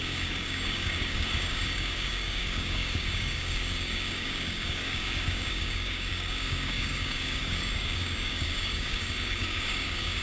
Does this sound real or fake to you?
fake